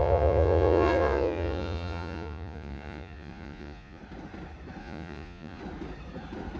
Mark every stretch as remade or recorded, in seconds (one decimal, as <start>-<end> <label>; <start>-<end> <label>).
0.0-4.0 remade; 4.0-4.8 recorded; 4.8-5.6 remade; 5.6-6.6 recorded